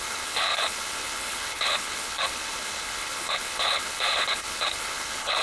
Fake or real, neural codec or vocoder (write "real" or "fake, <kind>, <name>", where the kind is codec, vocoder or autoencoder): fake, codec, HILCodec